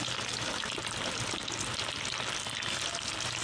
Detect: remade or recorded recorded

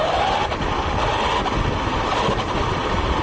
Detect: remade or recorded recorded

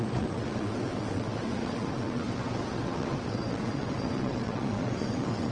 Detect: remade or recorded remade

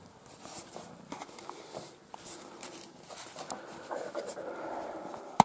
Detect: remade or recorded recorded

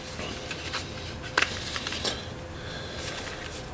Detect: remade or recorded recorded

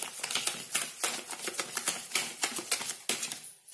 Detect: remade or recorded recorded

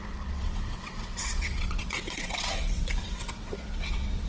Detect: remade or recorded remade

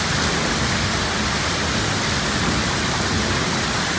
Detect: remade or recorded recorded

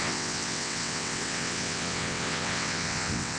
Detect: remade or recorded remade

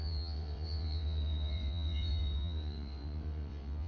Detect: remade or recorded remade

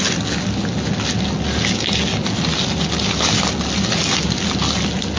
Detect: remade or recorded recorded